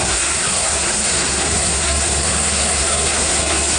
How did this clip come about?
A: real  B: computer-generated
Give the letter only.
B